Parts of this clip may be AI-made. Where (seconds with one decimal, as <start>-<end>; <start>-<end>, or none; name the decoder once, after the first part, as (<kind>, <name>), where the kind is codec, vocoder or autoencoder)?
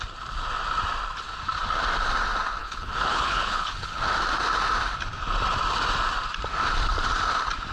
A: 2.6-4.0 (codec, HILCodec)